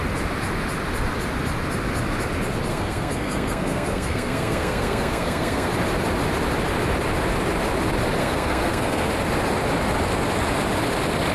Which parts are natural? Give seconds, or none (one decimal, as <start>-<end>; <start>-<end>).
0.0-2.7; 5.7-8.2; 9.1-11.3